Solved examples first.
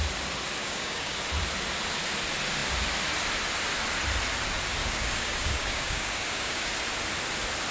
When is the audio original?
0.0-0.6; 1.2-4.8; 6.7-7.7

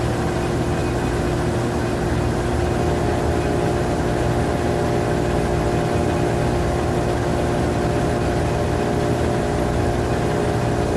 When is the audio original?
0.0-11.0

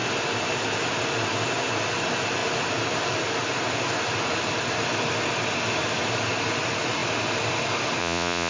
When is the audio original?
0.0-8.0

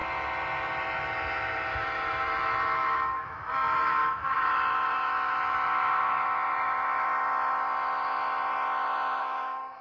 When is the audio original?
0.0-1.7; 7.1-9.2